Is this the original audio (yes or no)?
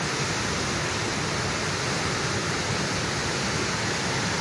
yes